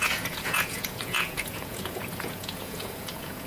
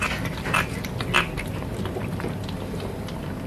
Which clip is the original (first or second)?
second